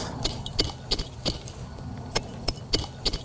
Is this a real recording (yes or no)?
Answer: yes